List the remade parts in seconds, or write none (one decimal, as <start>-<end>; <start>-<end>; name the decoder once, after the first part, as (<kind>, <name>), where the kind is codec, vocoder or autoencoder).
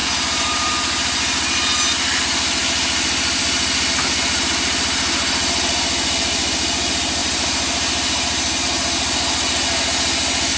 0.0-0.7 (vocoder, BigVGAN v2); 7.2-8.6